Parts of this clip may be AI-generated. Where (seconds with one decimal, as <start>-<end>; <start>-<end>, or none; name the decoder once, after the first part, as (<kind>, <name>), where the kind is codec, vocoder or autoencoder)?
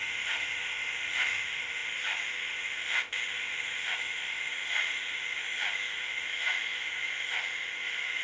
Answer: 0.0-8.2 (autoencoder, DAC-VAE)